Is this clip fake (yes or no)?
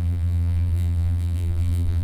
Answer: yes